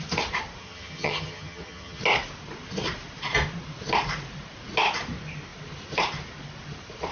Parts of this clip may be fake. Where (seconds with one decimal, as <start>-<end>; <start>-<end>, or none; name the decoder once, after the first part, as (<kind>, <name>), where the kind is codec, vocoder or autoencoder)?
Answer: 0.6-2.0 (vocoder, HiFi-GAN)